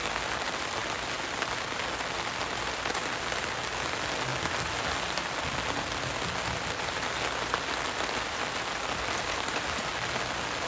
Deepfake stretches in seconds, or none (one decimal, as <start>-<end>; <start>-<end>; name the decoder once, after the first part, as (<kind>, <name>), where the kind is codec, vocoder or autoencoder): none